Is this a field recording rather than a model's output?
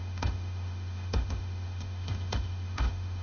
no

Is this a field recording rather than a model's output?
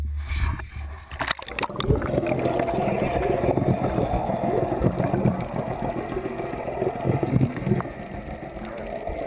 yes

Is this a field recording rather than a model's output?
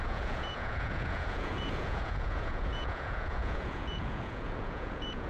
no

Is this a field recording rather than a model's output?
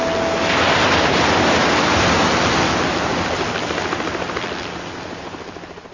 yes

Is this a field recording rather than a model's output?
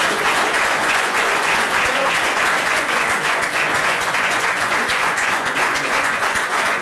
no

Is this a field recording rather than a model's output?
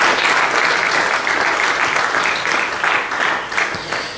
yes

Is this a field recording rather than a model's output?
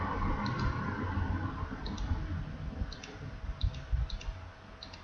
yes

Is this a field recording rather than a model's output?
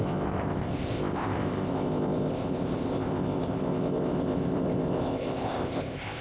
no